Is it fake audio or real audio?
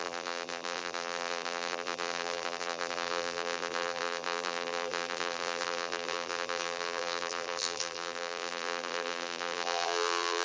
fake